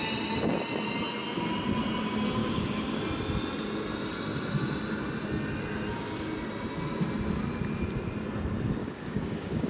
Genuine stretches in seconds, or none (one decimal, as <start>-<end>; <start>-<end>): 0.0-2.4; 3.0-8.8